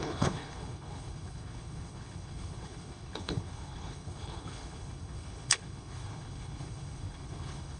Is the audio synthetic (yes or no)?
yes